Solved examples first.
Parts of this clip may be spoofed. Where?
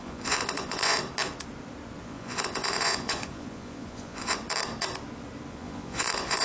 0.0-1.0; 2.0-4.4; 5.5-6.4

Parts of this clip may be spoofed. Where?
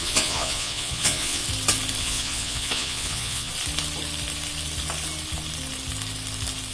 0.0-1.4; 2.0-3.5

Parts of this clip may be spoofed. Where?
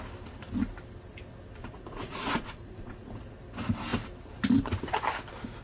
1.6-3.2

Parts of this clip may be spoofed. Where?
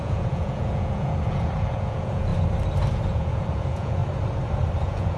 0.0-2.3; 2.9-4.0; 4.8-5.2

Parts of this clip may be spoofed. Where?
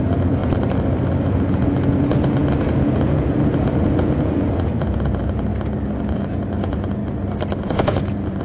0.0-0.4; 1.2-5.5; 6.0-7.0; 7.6-8.4